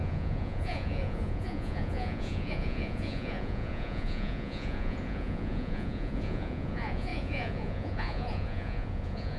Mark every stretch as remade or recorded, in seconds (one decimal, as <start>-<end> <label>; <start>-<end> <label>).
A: 0.0-9.4 remade